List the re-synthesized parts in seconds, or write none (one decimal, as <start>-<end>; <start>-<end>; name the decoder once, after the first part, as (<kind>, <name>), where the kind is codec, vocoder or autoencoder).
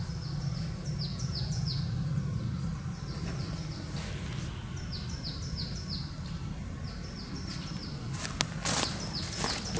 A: 1.1-1.8 (vocoder, Vocos)